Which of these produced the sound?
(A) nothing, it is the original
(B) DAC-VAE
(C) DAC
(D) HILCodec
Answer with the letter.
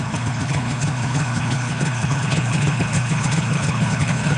D